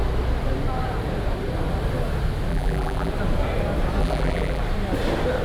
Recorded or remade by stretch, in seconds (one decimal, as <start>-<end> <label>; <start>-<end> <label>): 0.0-2.5 recorded; 2.5-3.1 remade; 3.1-4.0 recorded; 4.0-4.6 remade; 4.6-5.4 recorded